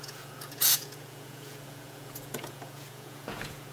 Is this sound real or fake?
fake